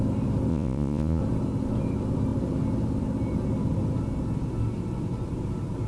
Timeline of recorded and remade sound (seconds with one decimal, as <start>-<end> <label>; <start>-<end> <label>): 0.0-0.5 recorded; 0.5-1.2 remade; 1.2-5.9 recorded